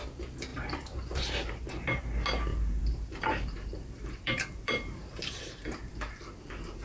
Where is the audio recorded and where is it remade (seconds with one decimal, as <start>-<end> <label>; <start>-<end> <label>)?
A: 0.0-0.5 recorded; 0.5-2.0 remade; 2.0-2.5 recorded; 2.5-5.9 remade; 5.9-6.8 recorded